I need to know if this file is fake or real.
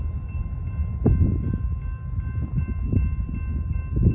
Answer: real